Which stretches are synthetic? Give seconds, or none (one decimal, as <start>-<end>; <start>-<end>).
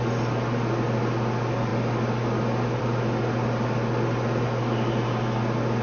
none